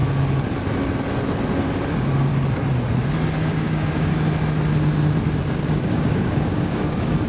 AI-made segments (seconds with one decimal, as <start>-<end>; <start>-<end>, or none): 1.9-2.3; 3.3-4.1; 5.7-7.3

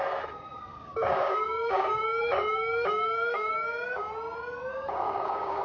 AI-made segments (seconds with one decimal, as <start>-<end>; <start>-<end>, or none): 0.7-4.1; 4.7-5.6

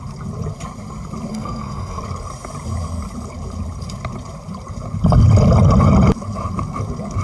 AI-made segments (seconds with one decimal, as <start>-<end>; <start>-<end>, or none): 1.3-2.0

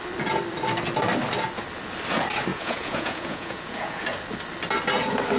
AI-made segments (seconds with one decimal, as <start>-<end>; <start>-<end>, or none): 2.5-4.0

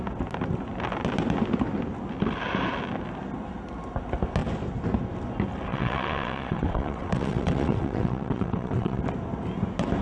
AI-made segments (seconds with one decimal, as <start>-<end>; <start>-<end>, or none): 5.7-9.0

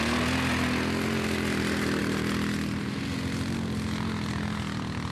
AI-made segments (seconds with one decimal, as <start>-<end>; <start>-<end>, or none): none

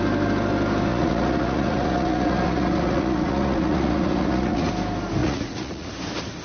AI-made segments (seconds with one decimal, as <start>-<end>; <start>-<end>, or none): 0.9-4.7; 5.2-5.9